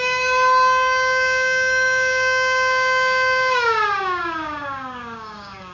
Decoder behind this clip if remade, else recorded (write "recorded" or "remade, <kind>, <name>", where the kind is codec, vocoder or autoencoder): remade, codec, DAC